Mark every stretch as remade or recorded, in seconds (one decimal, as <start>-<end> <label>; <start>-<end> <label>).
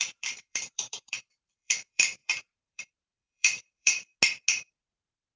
0.0-4.1 remade; 4.1-4.6 recorded; 4.6-5.4 remade